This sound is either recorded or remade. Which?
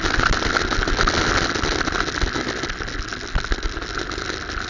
recorded